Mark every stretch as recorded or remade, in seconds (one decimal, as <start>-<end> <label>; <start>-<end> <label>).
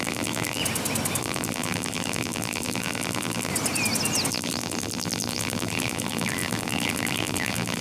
0.0-0.6 remade; 0.6-1.2 recorded; 1.2-3.5 remade; 3.5-4.3 recorded; 4.3-7.8 remade